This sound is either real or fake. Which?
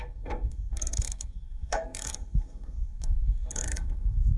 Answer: fake